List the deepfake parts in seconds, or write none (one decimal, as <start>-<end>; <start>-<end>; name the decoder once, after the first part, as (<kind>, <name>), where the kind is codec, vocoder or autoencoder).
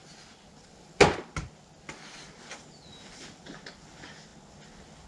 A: none